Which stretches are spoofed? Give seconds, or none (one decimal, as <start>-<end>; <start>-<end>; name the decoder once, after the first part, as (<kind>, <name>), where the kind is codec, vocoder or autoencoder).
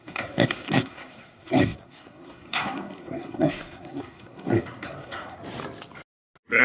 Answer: 0.0-5.4 (codec, SNAC)